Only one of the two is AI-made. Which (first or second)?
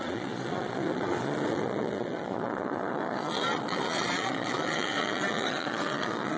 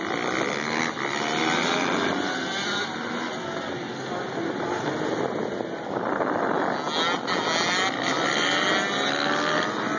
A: first